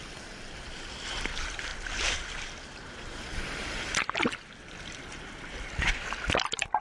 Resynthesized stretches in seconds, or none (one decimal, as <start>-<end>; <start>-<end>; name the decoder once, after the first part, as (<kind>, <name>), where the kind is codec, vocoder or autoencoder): none